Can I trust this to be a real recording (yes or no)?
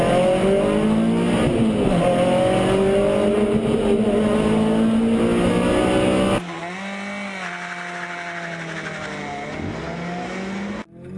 yes